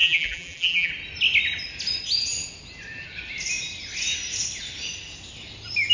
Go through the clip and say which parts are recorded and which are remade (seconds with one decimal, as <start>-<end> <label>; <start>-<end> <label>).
0.0-0.9 remade; 0.9-5.9 recorded